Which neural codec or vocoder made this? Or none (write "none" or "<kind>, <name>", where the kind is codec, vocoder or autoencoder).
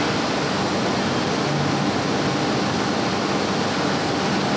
none